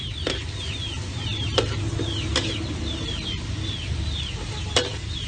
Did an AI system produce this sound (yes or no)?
no